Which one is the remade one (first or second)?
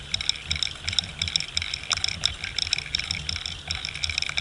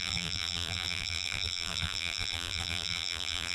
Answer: second